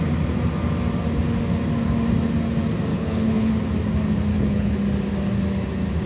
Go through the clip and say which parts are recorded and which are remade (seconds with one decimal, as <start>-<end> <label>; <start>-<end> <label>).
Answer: 0.0-2.9 recorded; 2.9-3.5 remade; 3.5-4.3 recorded; 4.3-4.8 remade; 4.8-6.1 recorded